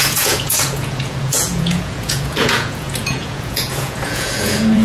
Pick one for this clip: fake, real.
fake